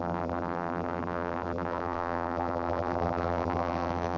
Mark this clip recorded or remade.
remade